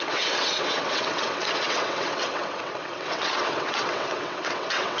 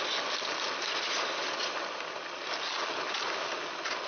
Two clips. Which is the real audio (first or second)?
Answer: second